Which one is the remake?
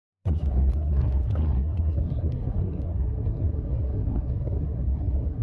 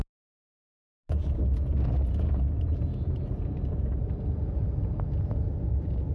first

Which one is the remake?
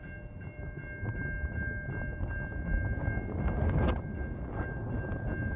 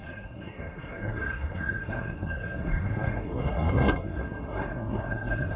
second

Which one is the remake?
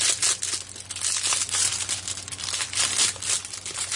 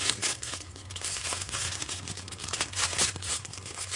second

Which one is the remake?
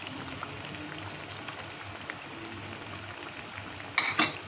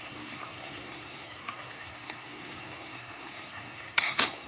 second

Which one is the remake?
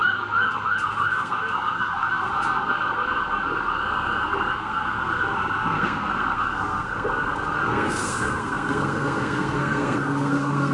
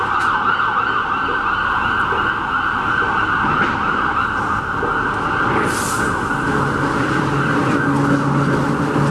first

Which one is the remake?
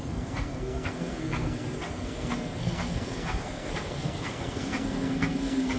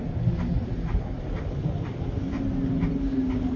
first